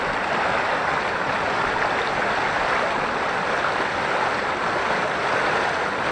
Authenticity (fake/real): real